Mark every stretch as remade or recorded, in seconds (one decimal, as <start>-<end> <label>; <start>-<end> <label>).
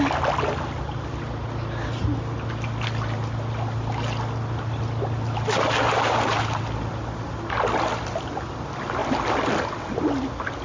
0.0-10.6 recorded